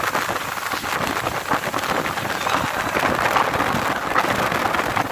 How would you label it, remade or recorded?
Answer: recorded